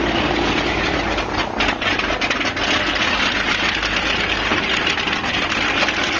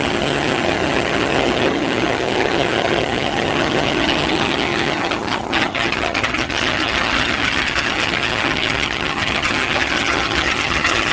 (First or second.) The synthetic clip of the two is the second